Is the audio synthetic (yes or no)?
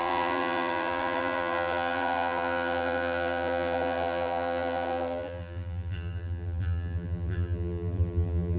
yes